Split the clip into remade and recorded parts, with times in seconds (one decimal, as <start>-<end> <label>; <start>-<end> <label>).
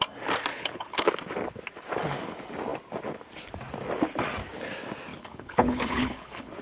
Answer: 0.0-0.5 recorded; 0.5-1.1 remade; 1.1-5.1 recorded; 5.1-6.6 remade